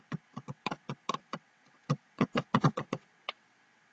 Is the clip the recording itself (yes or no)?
no